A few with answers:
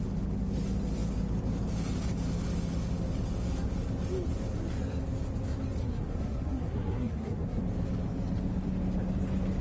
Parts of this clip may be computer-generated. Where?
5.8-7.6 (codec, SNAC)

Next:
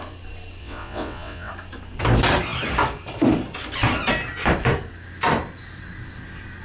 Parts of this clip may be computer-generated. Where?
0.6-1.5 (vocoder, WaveNeXt)

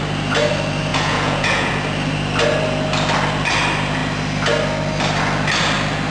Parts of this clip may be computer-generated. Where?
0.9-1.7 (vocoder, Vocos)